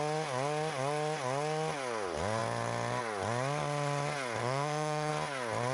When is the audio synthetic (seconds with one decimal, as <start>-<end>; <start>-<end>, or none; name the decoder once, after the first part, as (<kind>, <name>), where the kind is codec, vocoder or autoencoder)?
4.4-5.1 (autoencoder, DAC-VAE)